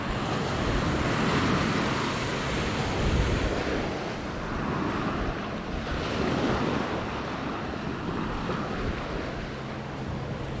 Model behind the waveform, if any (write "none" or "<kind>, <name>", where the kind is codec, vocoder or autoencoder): none